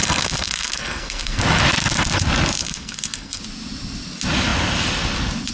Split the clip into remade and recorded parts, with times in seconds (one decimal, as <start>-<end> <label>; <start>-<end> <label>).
0.0-1.4 remade; 1.4-2.6 recorded; 2.6-3.4 remade; 3.4-5.5 recorded

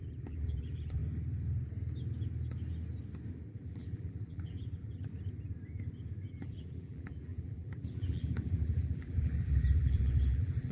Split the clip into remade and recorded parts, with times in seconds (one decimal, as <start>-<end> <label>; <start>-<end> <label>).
0.0-1.0 remade; 1.0-3.5 recorded; 3.5-5.1 remade; 5.1-6.3 recorded; 6.3-10.7 remade

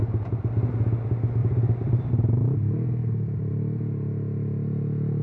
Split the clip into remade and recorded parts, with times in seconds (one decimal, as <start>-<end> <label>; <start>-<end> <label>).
0.0-0.7 remade; 0.7-1.4 recorded; 1.4-2.1 remade; 2.1-3.0 recorded; 3.0-3.5 remade; 3.5-5.2 recorded

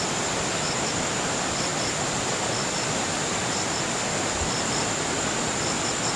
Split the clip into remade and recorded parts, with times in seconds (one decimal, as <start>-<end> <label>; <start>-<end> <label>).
0.0-6.2 recorded

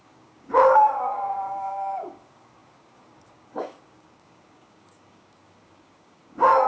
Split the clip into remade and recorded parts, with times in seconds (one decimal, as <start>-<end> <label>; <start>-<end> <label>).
0.0-6.7 remade

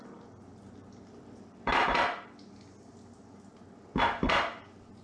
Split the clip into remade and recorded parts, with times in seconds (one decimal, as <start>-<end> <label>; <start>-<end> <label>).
0.0-0.5 recorded; 0.5-1.7 remade; 1.7-5.0 recorded

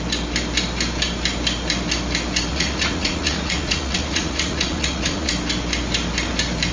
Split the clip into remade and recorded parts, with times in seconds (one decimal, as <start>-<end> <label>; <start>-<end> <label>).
0.0-2.5 recorded; 2.5-5.3 remade; 5.3-6.7 recorded

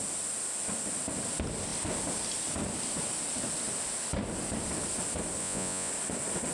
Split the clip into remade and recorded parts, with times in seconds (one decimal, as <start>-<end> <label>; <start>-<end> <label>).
0.0-5.4 recorded; 5.4-5.9 remade; 5.9-6.5 recorded